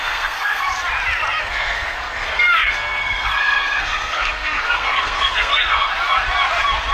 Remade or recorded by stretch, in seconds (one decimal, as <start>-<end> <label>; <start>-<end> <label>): 0.0-0.7 remade; 0.7-1.4 recorded; 1.4-5.9 remade; 5.9-6.9 recorded

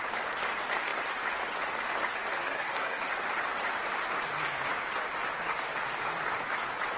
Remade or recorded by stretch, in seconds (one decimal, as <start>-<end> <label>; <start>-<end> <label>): 0.0-2.3 recorded; 2.3-3.0 remade; 3.0-7.0 recorded